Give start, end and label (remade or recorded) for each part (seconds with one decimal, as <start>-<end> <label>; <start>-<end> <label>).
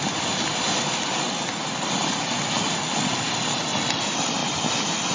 0.0-1.1 recorded; 1.1-4.0 remade; 4.0-4.4 recorded; 4.4-5.1 remade